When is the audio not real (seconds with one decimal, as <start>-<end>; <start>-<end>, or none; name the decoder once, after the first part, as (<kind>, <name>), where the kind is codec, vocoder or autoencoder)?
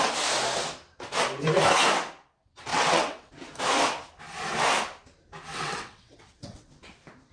2.7-3.3 (vocoder, WaveNeXt); 5.5-6.7